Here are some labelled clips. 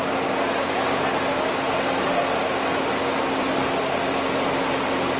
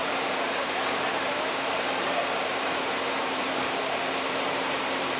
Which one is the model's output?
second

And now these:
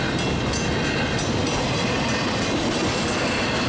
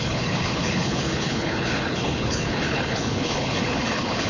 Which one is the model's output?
second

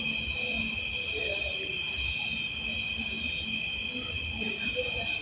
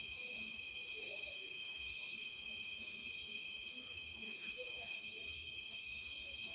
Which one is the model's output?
second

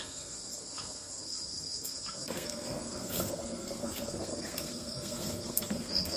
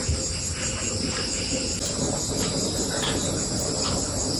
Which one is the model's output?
first